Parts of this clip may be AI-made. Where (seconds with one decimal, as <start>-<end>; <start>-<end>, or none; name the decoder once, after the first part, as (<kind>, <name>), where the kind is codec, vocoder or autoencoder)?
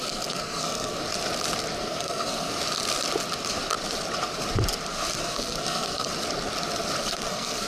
0.0-1.0 (codec, SNAC); 1.8-2.5; 5.2-6.1; 7.0-7.7